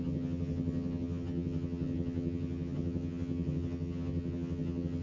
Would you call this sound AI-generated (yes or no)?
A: yes